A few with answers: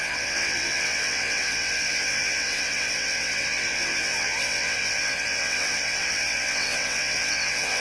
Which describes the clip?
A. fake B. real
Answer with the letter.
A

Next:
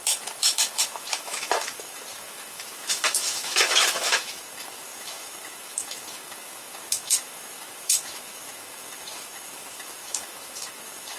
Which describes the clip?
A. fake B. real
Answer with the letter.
A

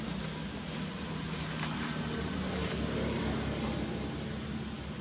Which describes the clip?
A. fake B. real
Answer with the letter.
B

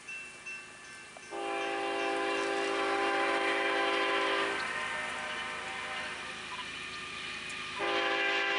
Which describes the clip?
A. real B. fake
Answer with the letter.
A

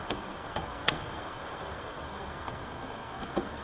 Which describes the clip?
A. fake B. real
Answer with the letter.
A